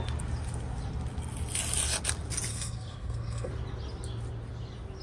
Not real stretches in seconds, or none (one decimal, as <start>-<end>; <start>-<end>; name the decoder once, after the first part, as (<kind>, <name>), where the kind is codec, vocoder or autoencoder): 2.5-3.5 (codec, SNAC)